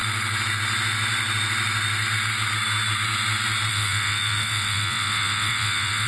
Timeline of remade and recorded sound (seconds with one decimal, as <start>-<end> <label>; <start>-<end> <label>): 0.0-3.7 recorded; 3.7-6.1 remade